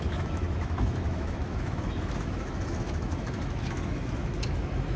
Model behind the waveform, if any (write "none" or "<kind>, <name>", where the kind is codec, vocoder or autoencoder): autoencoder, DAC-VAE